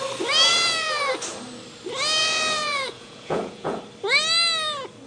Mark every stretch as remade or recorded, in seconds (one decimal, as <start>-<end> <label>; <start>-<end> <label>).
0.0-0.5 recorded; 0.5-1.0 remade; 1.0-2.2 recorded; 2.2-3.8 remade; 3.8-5.1 recorded